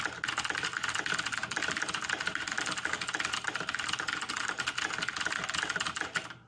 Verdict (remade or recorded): recorded